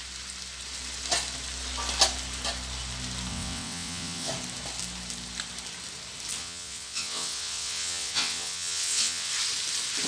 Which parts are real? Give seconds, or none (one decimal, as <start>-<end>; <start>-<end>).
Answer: 0.0-3.3; 4.3-6.4; 9.3-10.1